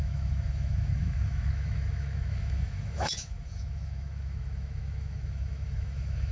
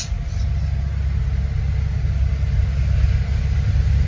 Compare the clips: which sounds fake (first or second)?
first